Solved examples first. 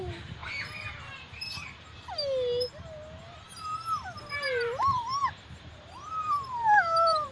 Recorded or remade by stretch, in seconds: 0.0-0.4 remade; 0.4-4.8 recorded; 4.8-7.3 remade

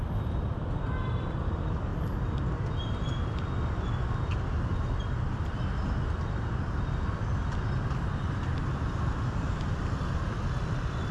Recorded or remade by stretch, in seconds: 0.0-11.1 recorded

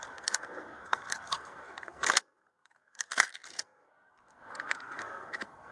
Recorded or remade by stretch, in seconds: 0.0-5.7 remade

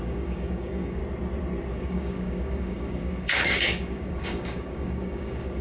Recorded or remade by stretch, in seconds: 0.0-1.0 remade; 1.0-1.7 recorded; 1.7-5.6 remade

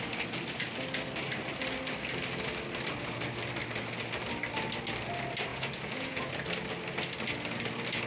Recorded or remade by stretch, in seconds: 0.0-5.5 recorded; 5.5-6.3 remade; 6.3-8.1 recorded

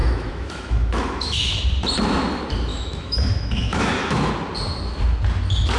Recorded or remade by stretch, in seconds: 0.0-1.6 remade; 1.6-2.7 recorded; 2.7-4.3 remade; 4.3-5.8 recorded

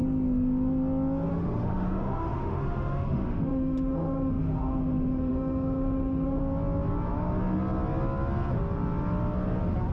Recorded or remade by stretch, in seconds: 0.0-1.3 recorded; 1.3-6.4 remade; 6.4-9.9 recorded

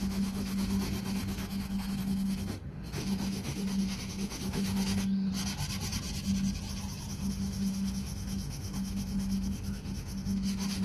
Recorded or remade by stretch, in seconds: 0.0-5.3 remade; 5.3-7.1 recorded; 7.1-10.8 remade